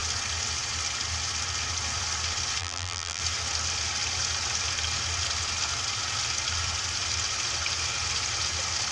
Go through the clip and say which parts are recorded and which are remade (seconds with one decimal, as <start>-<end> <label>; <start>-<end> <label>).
0.0-2.6 recorded; 2.6-3.2 remade; 3.2-8.9 recorded